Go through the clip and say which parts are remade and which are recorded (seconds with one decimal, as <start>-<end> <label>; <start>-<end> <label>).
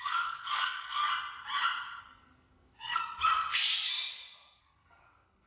0.0-1.0 remade; 1.0-2.0 recorded; 2.0-3.0 remade; 3.0-4.6 recorded; 4.6-5.5 remade